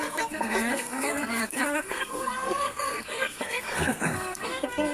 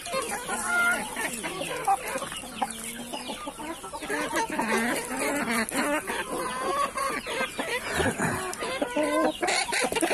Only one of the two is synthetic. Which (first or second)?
first